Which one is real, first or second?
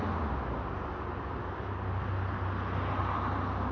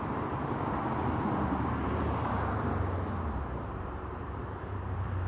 first